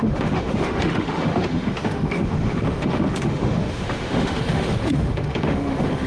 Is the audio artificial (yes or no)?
yes